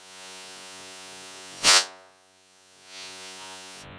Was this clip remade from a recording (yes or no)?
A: yes